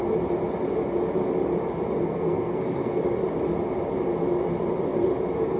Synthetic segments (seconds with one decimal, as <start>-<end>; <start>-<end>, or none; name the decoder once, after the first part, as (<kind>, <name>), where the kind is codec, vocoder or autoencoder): 2.0-3.0 (codec, SNAC)